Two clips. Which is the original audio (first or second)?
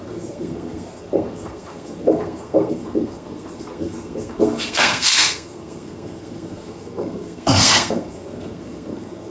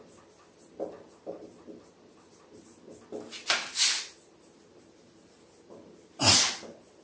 second